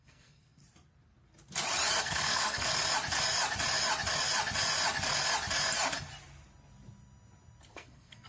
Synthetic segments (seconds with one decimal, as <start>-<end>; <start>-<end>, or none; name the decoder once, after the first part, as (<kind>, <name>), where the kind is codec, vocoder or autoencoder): 0.0-0.6 (codec, SNAC); 2.0-2.7; 7.7-8.3